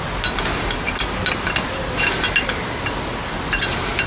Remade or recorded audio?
recorded